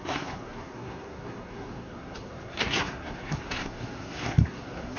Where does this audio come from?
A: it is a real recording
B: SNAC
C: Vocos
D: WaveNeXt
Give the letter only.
B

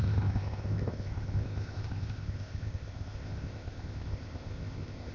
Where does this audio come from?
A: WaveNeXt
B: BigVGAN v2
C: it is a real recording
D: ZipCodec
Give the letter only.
D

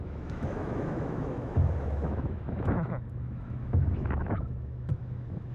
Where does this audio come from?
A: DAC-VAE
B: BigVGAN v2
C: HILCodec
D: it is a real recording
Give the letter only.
A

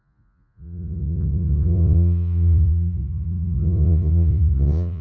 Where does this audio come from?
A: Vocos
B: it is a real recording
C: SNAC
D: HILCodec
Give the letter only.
A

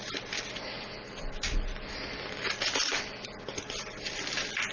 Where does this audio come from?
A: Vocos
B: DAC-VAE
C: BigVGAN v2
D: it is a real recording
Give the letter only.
D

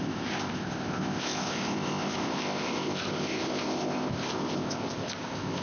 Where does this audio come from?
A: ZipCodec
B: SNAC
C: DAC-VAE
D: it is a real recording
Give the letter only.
A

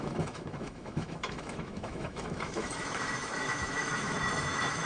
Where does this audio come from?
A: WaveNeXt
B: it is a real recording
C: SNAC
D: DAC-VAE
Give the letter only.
D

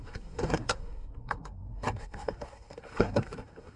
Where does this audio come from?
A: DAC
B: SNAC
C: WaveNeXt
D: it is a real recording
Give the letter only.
B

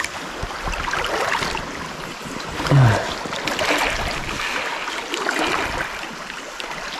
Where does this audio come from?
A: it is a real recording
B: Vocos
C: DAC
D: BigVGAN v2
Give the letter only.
A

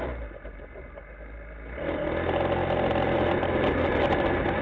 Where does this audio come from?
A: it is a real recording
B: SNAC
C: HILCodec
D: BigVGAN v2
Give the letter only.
A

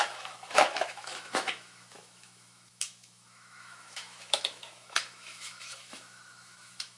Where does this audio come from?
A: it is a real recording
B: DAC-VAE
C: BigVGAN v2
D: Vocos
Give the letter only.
B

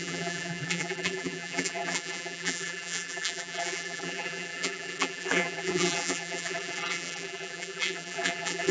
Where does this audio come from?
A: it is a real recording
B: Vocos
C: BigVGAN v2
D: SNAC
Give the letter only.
C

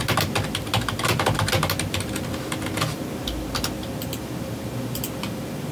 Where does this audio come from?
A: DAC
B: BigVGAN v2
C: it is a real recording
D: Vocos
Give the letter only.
C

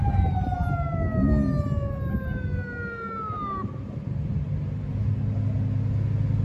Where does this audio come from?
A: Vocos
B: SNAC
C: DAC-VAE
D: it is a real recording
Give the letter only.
D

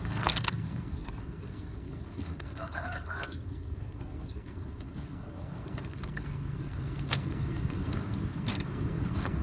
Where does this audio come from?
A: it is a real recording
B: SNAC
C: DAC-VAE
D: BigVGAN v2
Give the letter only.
B